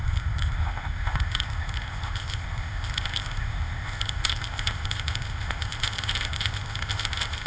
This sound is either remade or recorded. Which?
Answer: remade